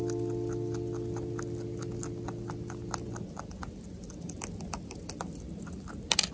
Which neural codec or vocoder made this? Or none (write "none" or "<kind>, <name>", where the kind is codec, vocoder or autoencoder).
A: none